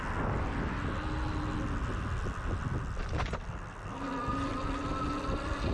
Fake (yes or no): no